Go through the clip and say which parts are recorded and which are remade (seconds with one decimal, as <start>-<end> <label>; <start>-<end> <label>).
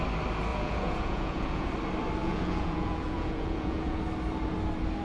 0.0-0.5 recorded; 0.5-1.7 remade; 1.7-2.2 recorded; 2.2-4.0 remade; 4.0-5.0 recorded